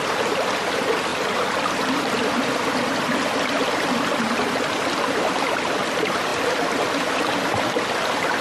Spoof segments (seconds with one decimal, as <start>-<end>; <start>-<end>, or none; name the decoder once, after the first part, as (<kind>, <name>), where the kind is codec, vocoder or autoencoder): none